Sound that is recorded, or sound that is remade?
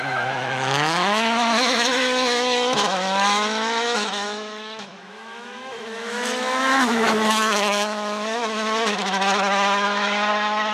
remade